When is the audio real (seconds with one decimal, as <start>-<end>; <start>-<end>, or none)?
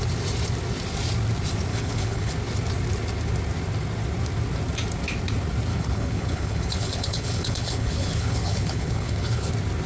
0.0-1.7; 2.3-5.7; 9.5-9.9